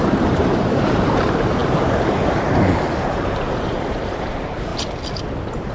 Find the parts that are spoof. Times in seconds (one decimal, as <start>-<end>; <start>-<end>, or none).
0.0-4.7